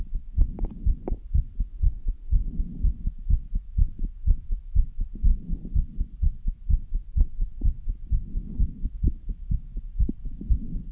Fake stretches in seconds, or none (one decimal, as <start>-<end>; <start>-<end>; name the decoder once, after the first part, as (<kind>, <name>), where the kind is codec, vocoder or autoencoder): 2.4-3.0 (vocoder, Vocos)